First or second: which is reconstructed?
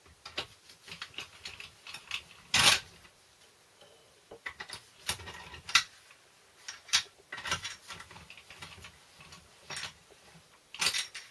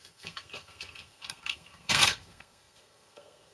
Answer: second